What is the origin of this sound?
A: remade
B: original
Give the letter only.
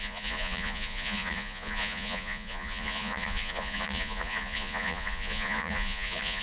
A